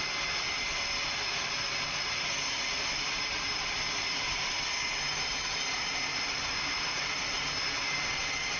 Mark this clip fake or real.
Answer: real